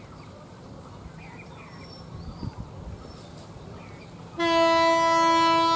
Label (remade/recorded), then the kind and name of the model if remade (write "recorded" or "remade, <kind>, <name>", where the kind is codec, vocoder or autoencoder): recorded